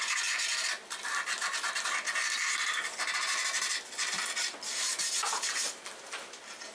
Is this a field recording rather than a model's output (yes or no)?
yes